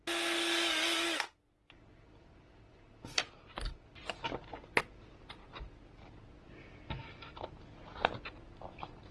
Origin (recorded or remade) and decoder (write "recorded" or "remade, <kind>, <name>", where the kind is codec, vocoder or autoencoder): recorded